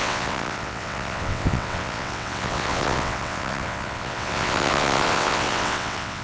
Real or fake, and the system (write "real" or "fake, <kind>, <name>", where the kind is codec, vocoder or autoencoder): fake, vocoder, WaveNeXt